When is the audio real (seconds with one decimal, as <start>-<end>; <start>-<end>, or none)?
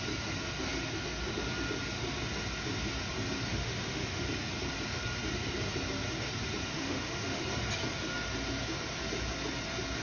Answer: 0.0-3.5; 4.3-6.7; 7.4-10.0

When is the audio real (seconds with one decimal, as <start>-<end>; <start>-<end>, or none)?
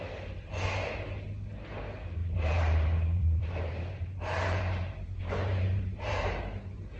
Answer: 0.0-2.2; 6.4-7.0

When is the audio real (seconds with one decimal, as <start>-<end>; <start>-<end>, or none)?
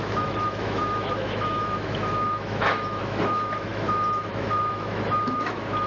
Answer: none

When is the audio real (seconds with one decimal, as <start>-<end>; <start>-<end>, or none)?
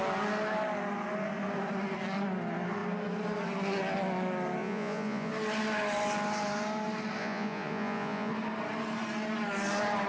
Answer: 0.0-4.6; 5.3-7.2; 8.3-10.1